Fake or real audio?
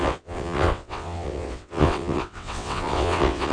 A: fake